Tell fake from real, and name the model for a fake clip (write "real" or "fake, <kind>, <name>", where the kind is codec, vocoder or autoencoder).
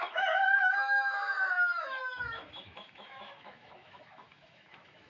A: fake, autoencoder, DAC-VAE